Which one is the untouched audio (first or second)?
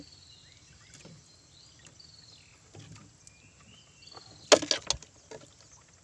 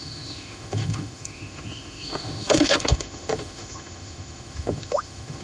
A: first